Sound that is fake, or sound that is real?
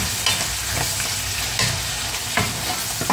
real